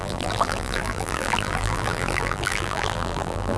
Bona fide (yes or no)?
no